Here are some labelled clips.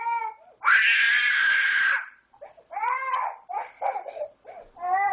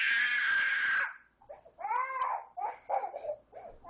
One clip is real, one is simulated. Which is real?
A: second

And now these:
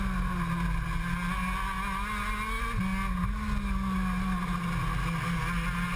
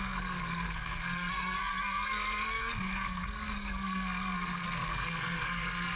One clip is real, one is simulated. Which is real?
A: first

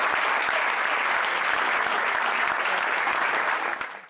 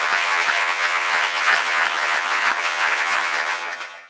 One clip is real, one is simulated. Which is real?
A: first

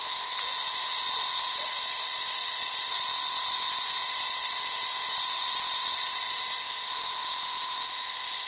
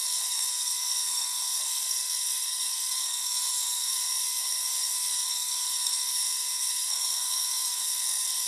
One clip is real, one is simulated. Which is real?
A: first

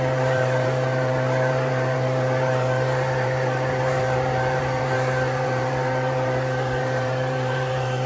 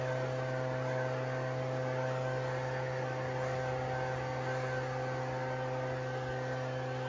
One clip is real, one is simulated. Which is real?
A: second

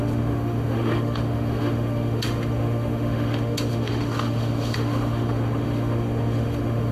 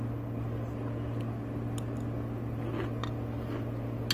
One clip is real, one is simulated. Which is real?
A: second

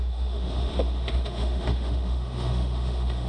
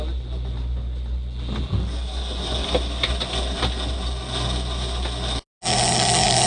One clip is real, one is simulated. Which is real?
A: second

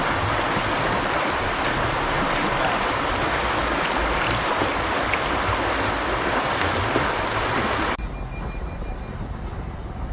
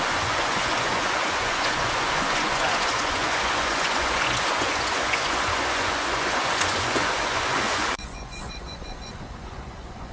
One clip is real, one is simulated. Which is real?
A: first